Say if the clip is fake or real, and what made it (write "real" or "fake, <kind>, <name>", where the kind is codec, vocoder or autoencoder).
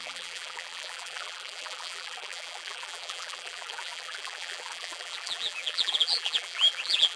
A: fake, vocoder, BigVGAN v2